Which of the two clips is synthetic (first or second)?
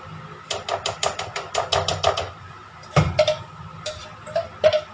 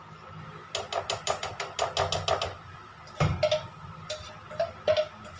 first